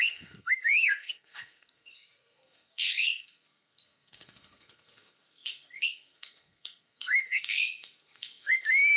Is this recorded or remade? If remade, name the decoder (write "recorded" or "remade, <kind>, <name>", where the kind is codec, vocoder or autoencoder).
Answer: remade, codec, SNAC